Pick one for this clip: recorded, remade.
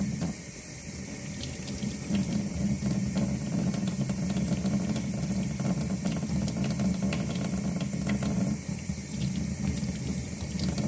remade